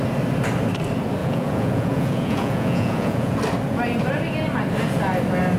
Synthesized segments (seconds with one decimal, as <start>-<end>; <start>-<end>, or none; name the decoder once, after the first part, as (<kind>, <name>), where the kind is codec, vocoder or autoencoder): 1.2-3.4 (vocoder, Vocos)